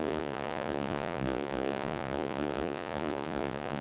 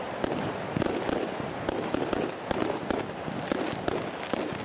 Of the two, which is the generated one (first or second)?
first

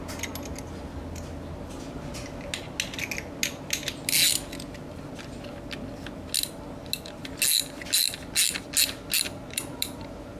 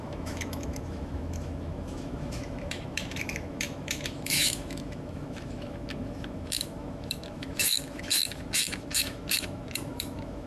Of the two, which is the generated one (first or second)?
second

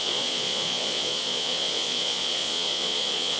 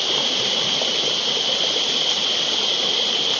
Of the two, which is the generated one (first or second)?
first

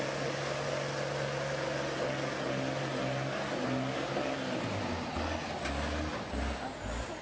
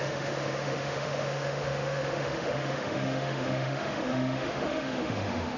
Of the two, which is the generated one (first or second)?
second